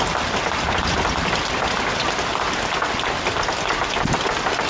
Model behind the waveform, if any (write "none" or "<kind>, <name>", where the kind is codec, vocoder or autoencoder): none